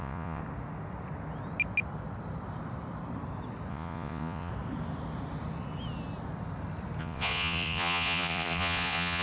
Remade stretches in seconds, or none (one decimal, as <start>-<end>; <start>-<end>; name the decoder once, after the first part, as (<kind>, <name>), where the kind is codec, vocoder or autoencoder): 0.0-0.4 (vocoder, Vocos); 3.7-4.5; 7.0-9.2